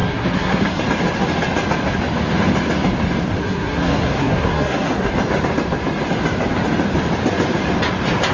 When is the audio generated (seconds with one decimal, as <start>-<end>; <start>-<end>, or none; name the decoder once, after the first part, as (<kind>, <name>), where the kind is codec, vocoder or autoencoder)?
0.0-0.8 (codec, SNAC); 3.4-5.1